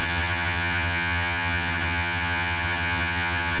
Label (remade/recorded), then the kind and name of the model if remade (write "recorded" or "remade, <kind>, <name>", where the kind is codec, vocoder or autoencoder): remade, vocoder, HiFi-GAN